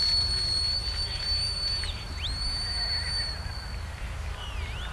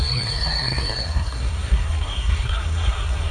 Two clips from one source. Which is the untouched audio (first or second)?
first